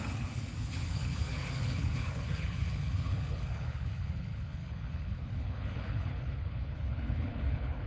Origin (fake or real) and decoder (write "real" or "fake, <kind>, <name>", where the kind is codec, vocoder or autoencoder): fake, codec, HILCodec